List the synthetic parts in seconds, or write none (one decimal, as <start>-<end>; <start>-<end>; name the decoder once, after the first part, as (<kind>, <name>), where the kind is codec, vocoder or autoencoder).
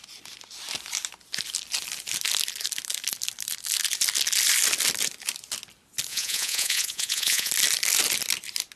6.1-7.5 (vocoder, Vocos)